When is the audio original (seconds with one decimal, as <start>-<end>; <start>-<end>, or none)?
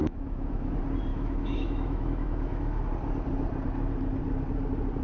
0.7-1.1; 2.8-5.0